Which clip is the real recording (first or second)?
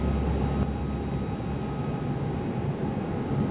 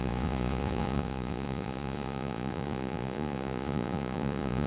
first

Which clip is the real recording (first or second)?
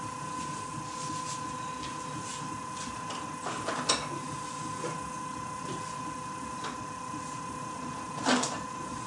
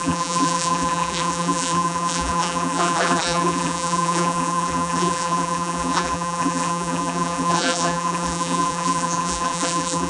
first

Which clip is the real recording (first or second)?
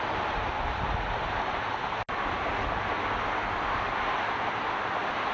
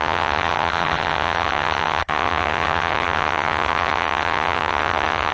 first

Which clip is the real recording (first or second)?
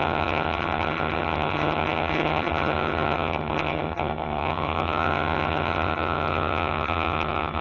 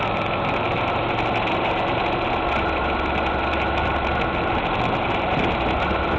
second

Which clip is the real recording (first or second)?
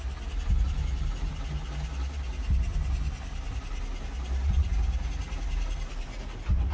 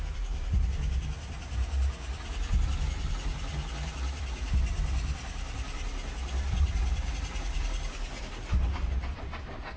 first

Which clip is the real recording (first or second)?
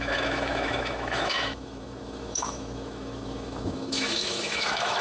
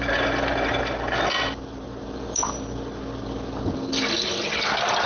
second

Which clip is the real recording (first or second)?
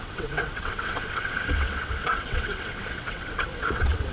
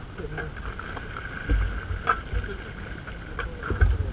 second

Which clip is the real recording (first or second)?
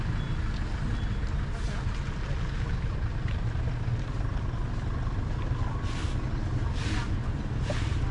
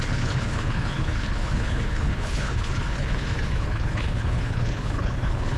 first